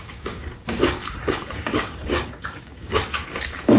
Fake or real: fake